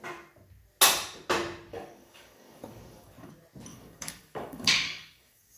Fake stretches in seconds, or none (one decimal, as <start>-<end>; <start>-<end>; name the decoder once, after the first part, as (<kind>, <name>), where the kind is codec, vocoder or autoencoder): 1.7-3.3 (codec, DAC); 3.7-5.6